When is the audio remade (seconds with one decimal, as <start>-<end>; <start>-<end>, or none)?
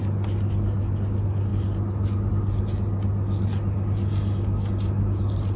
none